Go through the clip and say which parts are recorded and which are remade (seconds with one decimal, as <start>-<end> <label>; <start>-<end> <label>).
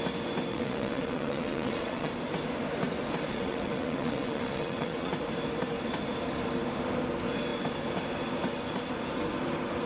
0.0-0.5 recorded; 0.5-2.1 remade; 2.1-3.3 recorded; 3.3-5.1 remade; 5.1-9.9 recorded